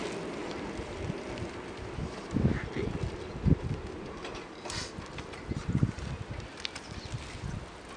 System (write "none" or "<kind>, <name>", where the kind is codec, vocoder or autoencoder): none